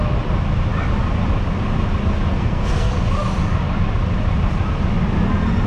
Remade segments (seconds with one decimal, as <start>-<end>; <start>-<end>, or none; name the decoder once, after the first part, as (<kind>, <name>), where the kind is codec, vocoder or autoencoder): 2.3-2.9 (codec, SNAC)